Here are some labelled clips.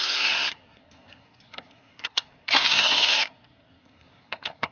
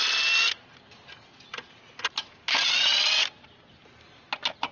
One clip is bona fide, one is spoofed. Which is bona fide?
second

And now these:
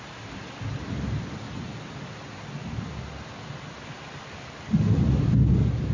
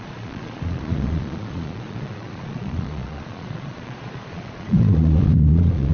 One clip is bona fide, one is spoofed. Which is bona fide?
first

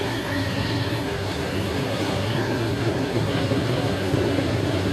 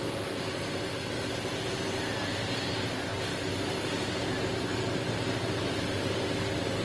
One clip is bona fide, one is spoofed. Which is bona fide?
second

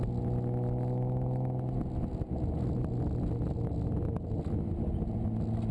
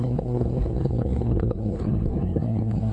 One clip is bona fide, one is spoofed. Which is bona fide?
first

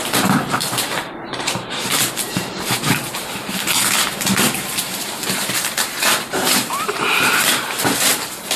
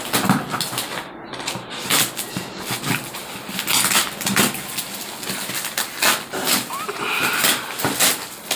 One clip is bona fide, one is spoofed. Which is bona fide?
second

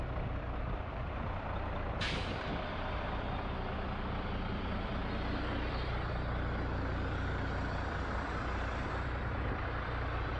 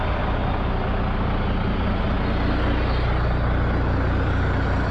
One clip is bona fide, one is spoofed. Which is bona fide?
second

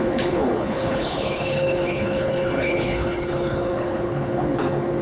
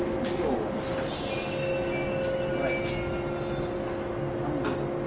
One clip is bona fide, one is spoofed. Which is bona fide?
second